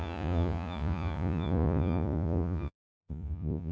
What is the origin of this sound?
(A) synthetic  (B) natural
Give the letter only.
A